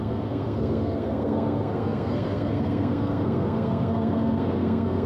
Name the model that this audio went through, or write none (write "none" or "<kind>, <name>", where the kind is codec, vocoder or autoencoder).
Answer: codec, SNAC